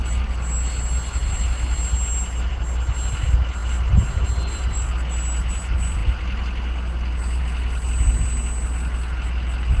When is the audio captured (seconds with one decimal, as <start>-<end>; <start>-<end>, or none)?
0.0-9.8